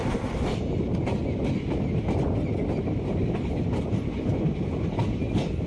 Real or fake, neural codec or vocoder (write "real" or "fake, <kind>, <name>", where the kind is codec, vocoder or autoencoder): real